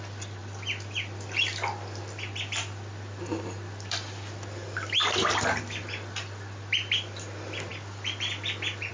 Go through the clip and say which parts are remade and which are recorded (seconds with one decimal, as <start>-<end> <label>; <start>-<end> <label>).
0.0-8.9 recorded